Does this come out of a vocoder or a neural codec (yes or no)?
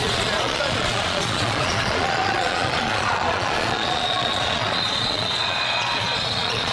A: yes